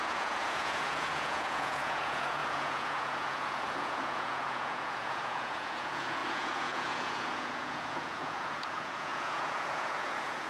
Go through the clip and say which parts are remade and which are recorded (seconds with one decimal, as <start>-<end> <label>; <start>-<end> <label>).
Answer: 0.0-10.5 remade